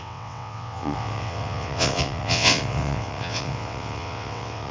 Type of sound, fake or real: fake